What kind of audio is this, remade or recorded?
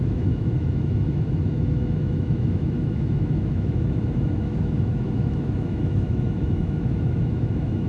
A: remade